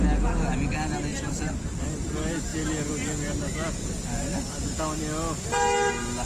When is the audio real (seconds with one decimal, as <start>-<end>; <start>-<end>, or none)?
0.0-1.1; 2.1-6.3